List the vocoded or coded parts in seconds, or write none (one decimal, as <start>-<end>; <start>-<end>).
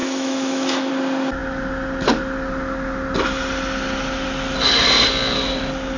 0.0-0.9